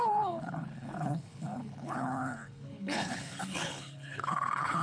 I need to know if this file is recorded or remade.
remade